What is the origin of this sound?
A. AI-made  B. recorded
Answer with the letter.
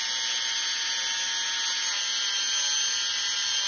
B